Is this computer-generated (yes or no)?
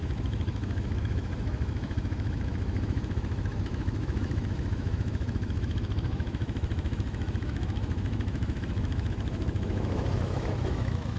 yes